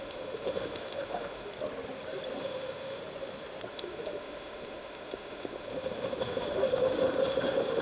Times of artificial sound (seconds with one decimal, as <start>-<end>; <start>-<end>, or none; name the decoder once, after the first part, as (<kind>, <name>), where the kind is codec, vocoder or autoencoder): 0.0-1.5 (autoencoder, DAC-VAE); 2.4-3.0; 3.7-7.8